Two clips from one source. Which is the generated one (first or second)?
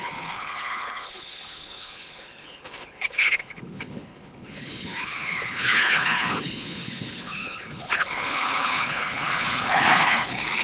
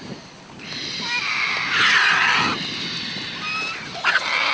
first